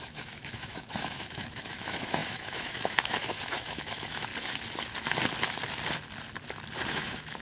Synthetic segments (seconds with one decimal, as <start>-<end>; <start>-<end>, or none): 0.0-4.3; 6.9-7.4